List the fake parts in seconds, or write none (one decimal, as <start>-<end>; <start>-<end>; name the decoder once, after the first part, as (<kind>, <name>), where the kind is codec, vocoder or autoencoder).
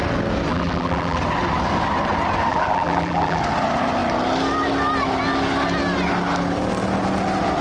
0.5-1.2 (vocoder, BigVGAN v2); 2.5-3.4